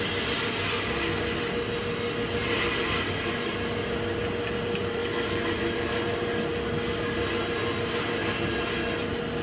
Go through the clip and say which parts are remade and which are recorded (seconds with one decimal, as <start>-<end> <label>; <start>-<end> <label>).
0.0-9.4 recorded